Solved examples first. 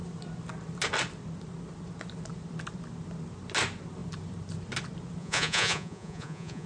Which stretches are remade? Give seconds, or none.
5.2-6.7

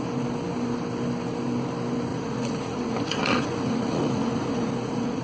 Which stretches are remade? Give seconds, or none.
2.1-5.2

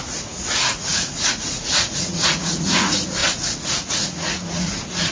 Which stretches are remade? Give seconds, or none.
0.0-5.1